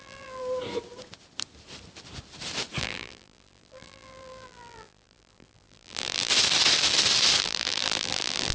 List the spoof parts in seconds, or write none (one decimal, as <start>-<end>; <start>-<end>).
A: 0.0-0.4; 2.8-6.3; 7.4-8.5